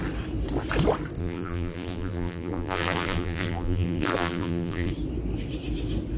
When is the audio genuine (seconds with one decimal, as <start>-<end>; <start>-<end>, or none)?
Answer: 0.0-1.2; 4.9-6.2

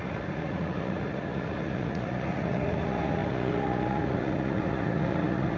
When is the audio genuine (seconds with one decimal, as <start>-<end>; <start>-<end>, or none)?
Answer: none

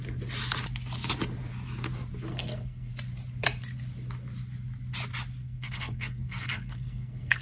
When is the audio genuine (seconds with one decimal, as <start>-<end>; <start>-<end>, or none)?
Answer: 0.0-2.3; 2.9-5.4

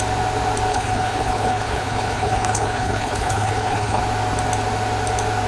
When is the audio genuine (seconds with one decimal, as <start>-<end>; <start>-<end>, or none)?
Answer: 0.0-0.7; 4.0-5.5

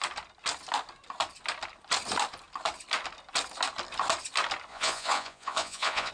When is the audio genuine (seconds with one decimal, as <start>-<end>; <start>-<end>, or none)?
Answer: 0.0-4.7

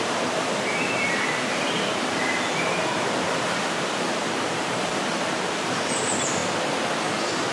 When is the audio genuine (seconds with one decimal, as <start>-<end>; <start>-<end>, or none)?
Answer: 6.4-7.5